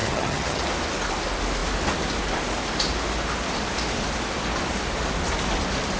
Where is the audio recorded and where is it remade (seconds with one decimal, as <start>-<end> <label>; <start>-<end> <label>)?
0.0-0.6 remade; 0.6-6.0 recorded